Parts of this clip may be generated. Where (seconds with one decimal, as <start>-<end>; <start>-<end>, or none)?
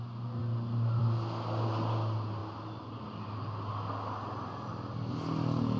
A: none